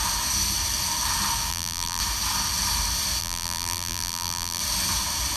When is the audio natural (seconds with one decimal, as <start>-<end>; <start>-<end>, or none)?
0.0-1.5; 2.0-3.2; 4.6-5.4